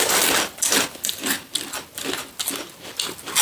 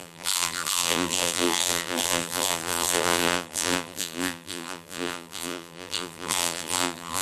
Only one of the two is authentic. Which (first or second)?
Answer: first